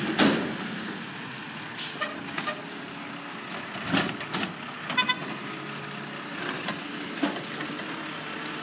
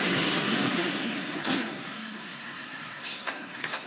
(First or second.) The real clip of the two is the first